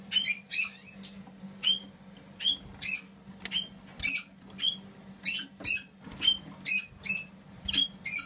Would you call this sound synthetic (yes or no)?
no